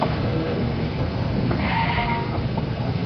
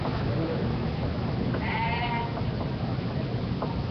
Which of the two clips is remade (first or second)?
first